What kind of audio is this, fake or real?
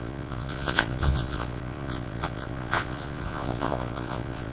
fake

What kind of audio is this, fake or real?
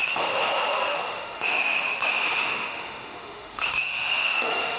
fake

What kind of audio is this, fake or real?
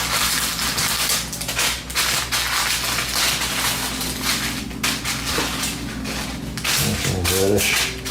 real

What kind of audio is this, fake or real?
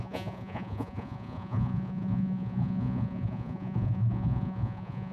fake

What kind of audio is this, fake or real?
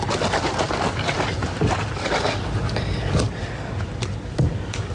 real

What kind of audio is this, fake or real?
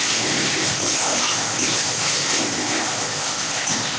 fake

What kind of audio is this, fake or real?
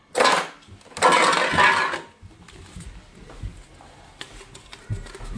real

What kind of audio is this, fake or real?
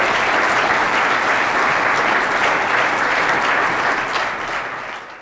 real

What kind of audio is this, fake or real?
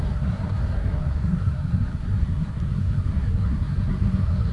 fake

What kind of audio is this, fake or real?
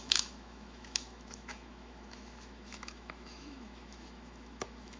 fake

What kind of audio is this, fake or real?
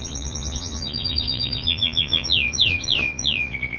fake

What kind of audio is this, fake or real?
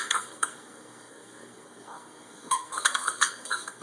fake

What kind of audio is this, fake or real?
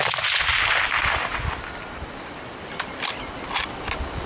real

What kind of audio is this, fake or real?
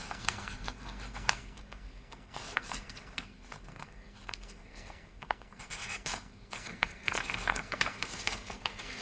fake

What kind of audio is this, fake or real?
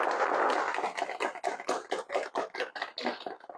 real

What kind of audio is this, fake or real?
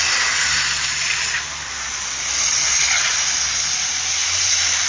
real